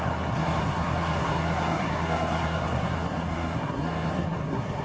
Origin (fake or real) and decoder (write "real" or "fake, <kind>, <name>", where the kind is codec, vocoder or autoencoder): fake, codec, SNAC